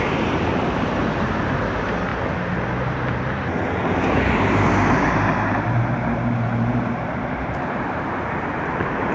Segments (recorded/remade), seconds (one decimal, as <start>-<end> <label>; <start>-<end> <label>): 0.0-2.1 remade; 2.1-5.1 recorded; 5.1-9.1 remade